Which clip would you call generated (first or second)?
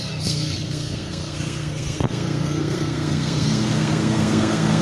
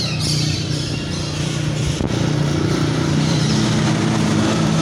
first